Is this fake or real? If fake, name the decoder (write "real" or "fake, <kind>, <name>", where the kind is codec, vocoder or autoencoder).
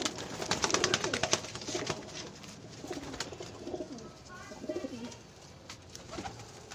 real